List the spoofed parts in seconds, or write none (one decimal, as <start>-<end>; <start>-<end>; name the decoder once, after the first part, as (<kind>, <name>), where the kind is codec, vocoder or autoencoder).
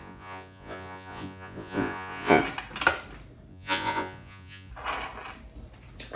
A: 0.0-2.4 (vocoder, Vocos); 3.5-4.7